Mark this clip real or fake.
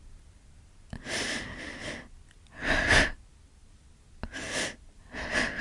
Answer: real